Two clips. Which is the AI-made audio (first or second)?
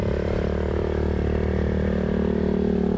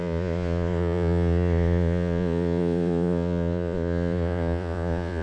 second